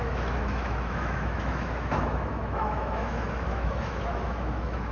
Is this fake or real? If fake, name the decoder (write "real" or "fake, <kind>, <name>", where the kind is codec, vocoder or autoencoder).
fake, autoencoder, DAC-VAE